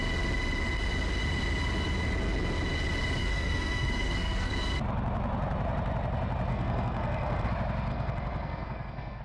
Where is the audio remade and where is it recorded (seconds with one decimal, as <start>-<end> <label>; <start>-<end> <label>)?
0.0-3.2 recorded; 3.2-4.5 remade; 4.5-6.5 recorded; 6.5-7.5 remade; 7.5-7.9 recorded; 7.9-9.2 remade